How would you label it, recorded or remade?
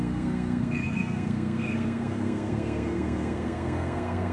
remade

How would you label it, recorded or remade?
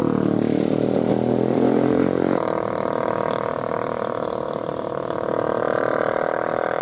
remade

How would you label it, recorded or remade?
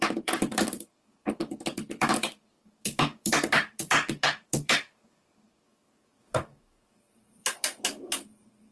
remade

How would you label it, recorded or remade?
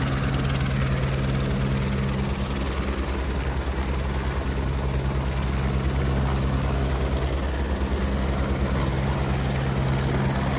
recorded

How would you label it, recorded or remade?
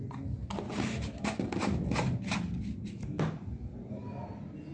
recorded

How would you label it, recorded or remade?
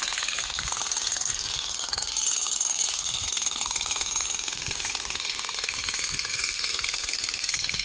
remade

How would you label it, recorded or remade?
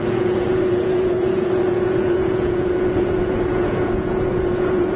remade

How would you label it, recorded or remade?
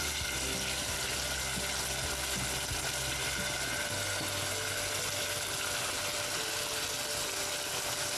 recorded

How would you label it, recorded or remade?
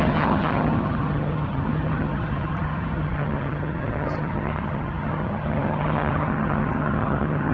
remade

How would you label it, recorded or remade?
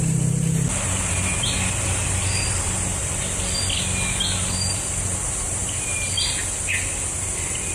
recorded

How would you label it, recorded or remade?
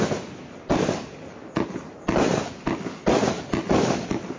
recorded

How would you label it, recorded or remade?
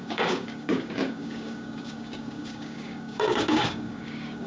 remade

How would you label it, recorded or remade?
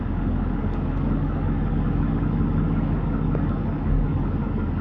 remade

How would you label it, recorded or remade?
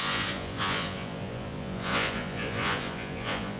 remade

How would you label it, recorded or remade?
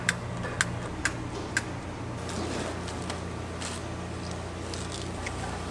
recorded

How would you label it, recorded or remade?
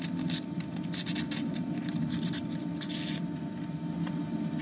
recorded